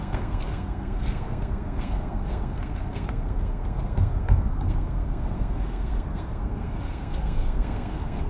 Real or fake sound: fake